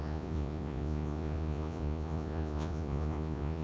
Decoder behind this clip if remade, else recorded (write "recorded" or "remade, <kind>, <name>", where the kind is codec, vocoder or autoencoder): remade, vocoder, Vocos